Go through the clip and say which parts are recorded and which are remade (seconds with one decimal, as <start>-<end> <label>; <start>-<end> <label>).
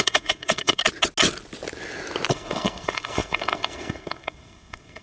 0.0-0.8 remade; 0.8-2.3 recorded; 2.3-5.0 remade